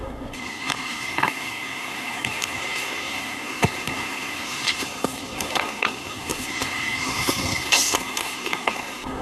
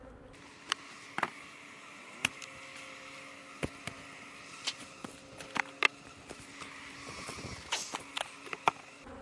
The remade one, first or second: first